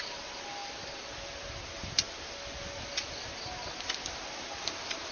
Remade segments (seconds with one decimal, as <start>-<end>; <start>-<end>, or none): none